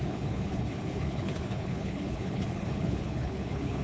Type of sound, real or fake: fake